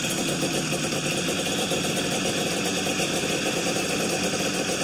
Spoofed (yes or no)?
no